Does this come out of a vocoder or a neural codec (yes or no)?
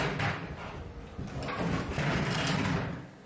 no